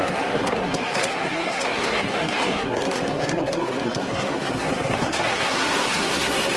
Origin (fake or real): fake